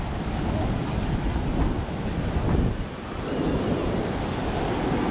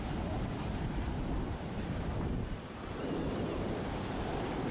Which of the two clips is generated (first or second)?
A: second